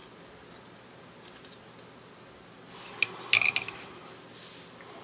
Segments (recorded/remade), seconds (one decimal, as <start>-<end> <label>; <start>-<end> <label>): 0.0-5.0 recorded